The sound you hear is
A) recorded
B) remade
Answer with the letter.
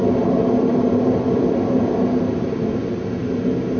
A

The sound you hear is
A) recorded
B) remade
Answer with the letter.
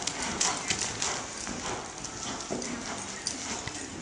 A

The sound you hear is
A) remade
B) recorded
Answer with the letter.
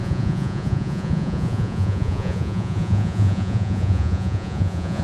A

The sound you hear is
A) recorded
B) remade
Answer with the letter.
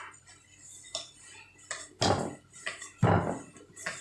A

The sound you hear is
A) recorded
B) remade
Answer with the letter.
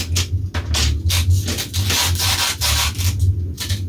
A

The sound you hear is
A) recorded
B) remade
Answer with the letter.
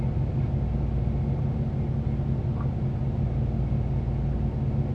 A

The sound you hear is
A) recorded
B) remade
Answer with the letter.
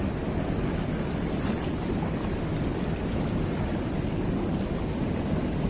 A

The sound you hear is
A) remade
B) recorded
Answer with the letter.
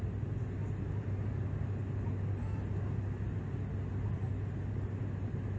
B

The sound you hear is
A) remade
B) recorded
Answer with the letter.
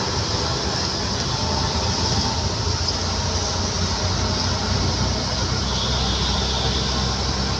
B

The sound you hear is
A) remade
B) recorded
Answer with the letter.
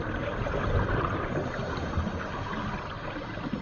B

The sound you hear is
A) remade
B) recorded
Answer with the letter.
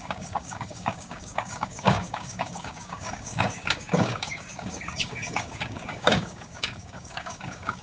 A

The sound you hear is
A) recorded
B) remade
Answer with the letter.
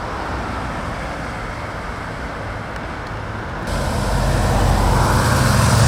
A